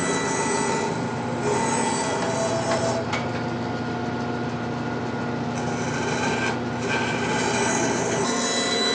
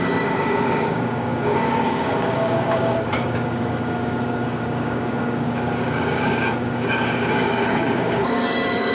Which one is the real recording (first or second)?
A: first